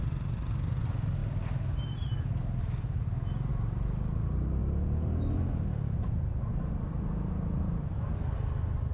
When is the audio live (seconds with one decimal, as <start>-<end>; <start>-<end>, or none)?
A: 0.0-8.9